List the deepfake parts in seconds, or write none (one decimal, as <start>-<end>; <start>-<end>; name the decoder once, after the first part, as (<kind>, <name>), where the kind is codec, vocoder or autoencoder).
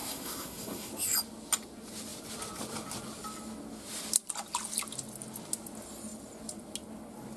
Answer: 0.0-0.9 (codec, SNAC)